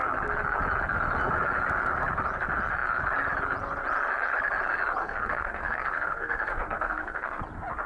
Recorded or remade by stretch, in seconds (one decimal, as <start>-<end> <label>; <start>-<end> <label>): 0.0-5.0 recorded; 5.0-7.4 remade; 7.4-7.9 recorded